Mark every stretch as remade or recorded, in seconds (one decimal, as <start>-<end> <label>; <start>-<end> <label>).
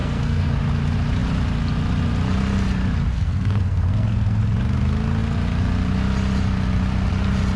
0.0-0.6 remade; 0.6-3.1 recorded; 3.1-4.4 remade; 4.4-7.6 recorded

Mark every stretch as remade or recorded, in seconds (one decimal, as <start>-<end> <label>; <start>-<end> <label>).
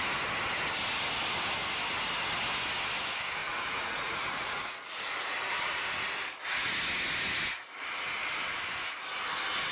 0.0-3.4 recorded; 3.4-5.1 remade; 5.1-9.7 recorded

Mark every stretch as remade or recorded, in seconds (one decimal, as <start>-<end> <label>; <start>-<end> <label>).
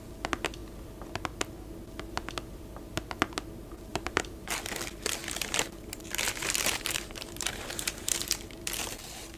0.0-3.9 recorded; 3.9-4.6 remade; 4.6-5.2 recorded; 5.2-8.2 remade; 8.2-8.8 recorded; 8.8-9.4 remade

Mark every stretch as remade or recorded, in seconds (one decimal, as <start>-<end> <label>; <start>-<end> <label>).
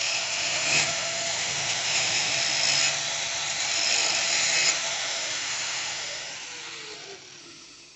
0.0-2.3 remade; 2.3-4.9 recorded; 4.9-6.3 remade; 6.3-7.4 recorded; 7.4-8.0 remade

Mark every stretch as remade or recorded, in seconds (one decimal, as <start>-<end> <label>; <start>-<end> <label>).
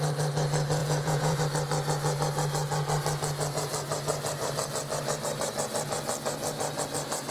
0.0-0.8 recorded; 0.8-1.4 remade; 1.4-7.3 recorded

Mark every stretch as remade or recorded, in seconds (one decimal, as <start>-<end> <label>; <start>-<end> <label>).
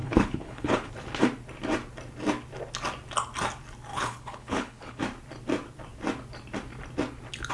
0.0-0.9 remade; 0.9-3.9 recorded; 3.9-5.0 remade; 5.0-7.5 recorded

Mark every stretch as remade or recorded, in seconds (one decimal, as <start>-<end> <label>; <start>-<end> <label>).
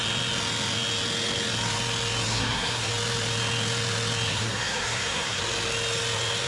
0.0-2.3 recorded; 2.3-2.9 remade; 2.9-4.3 recorded; 4.3-5.4 remade; 5.4-6.5 recorded